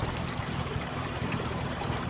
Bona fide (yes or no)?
no